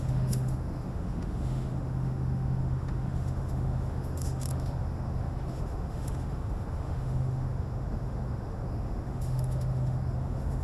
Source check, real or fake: fake